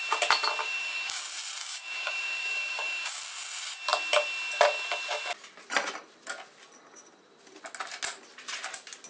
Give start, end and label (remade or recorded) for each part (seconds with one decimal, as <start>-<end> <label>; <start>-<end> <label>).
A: 0.0-0.6 recorded; 0.6-1.2 remade; 1.2-1.6 recorded; 1.6-3.2 remade; 3.2-9.1 recorded